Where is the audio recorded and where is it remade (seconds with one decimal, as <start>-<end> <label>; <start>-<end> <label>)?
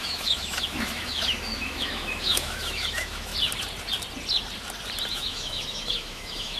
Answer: 0.0-3.3 remade; 3.3-5.1 recorded; 5.1-6.6 remade